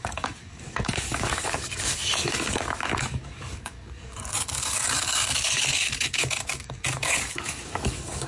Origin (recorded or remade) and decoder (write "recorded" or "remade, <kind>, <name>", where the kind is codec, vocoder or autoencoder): remade, codec, DAC